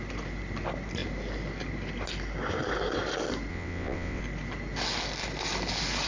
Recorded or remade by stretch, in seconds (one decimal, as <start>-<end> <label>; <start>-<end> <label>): 0.0-3.5 recorded; 3.5-4.2 remade; 4.2-6.1 recorded